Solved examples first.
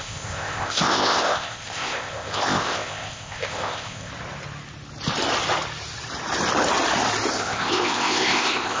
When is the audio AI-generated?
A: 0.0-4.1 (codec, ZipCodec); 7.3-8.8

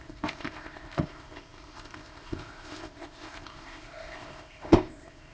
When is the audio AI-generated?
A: 0.0-5.3 (codec, ZipCodec)

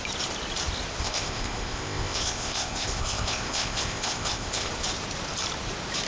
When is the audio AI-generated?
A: 1.0-4.7 (codec, ZipCodec)

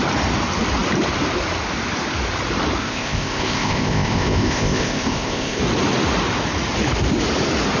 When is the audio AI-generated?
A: 2.8-5.6 (codec, ZipCodec)

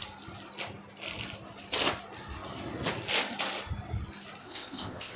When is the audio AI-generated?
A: 4.4-5.2 (codec, ZipCodec)

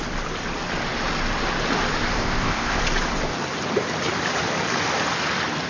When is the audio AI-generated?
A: 2.2-2.8 (codec, ZipCodec)